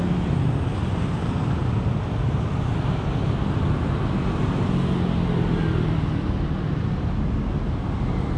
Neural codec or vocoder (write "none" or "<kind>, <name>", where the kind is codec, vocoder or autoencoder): none